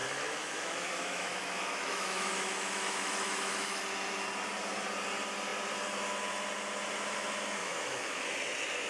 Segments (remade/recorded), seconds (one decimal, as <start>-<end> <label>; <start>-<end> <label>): 0.0-3.8 remade; 3.8-7.6 recorded; 7.6-8.3 remade; 8.3-8.9 recorded

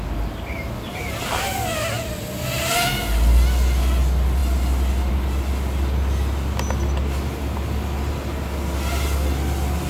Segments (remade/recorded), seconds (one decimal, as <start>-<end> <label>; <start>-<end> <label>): 0.0-9.9 recorded

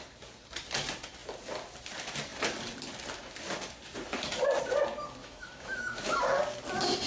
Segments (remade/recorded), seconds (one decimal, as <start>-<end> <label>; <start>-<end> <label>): 0.0-5.2 recorded; 5.2-6.2 remade; 6.2-7.1 recorded

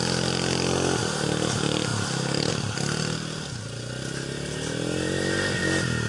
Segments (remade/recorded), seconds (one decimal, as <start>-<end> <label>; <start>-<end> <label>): 0.0-6.1 recorded

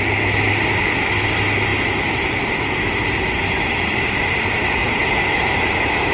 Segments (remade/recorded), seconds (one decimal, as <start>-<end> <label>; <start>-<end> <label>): 0.0-4.6 recorded; 4.6-6.1 remade

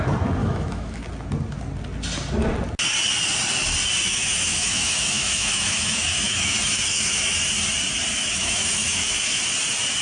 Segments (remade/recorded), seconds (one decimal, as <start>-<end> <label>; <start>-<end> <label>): 0.0-0.4 recorded; 0.4-1.0 remade; 1.0-4.0 recorded; 4.0-7.3 remade; 7.3-8.2 recorded; 8.2-9.4 remade; 9.4-10.0 recorded